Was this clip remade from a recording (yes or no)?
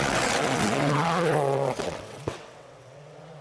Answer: yes